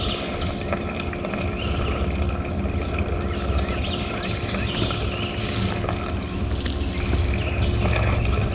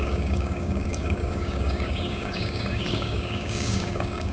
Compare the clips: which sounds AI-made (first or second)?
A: second